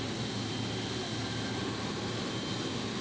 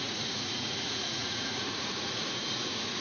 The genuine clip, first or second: first